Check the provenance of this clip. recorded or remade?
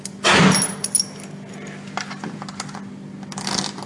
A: recorded